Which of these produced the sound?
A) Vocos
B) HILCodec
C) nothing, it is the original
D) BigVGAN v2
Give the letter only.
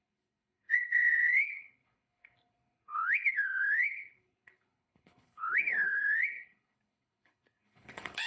B